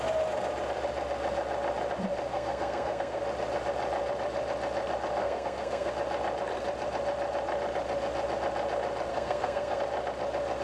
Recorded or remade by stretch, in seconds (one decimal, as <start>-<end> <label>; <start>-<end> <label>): 0.0-2.3 recorded; 2.3-3.2 remade; 3.2-5.2 recorded; 5.2-5.9 remade; 5.9-9.1 recorded; 9.1-9.8 remade; 9.8-10.6 recorded